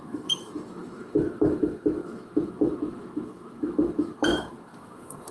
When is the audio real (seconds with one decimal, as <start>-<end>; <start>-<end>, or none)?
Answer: none